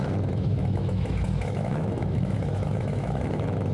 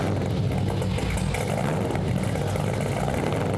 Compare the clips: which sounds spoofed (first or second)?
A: first